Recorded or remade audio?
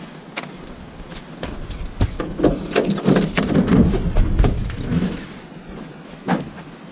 recorded